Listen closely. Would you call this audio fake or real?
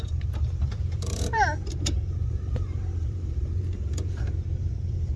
fake